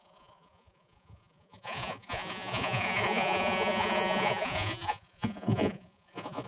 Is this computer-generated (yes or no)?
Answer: yes